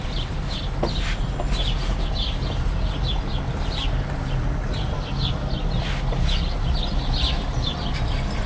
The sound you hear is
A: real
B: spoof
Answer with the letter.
A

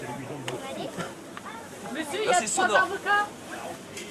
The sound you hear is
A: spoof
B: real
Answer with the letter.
A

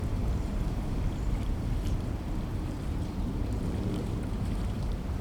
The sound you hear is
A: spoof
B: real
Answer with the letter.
A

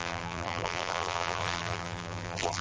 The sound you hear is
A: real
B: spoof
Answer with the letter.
B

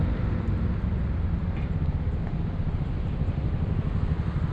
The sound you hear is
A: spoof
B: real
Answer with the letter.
A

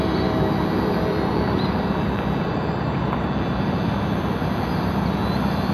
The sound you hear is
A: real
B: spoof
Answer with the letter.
B